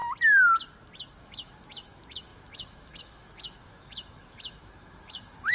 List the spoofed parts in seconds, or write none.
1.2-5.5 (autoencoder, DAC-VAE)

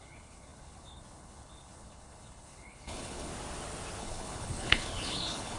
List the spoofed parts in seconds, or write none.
0.0-3.3 (codec, HILCodec); 4.0-5.6

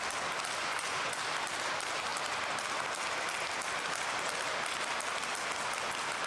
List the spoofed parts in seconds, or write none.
0.6-1.2 (vocoder, Vocos)